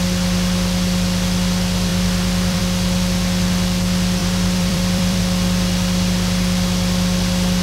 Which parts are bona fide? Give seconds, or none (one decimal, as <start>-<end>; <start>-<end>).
0.0-1.9; 2.6-4.2; 5.2-7.6